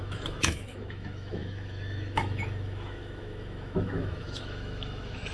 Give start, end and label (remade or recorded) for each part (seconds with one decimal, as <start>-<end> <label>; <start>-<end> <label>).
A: 0.0-5.3 remade